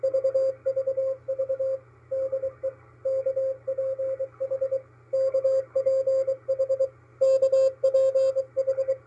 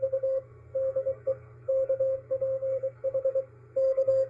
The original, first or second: first